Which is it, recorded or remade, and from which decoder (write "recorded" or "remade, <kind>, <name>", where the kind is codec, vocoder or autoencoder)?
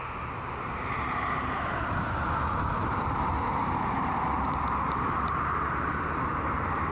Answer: remade, vocoder, BigVGAN v2